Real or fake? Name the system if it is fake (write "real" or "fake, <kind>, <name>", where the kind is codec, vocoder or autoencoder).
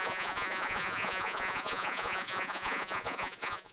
fake, vocoder, Vocos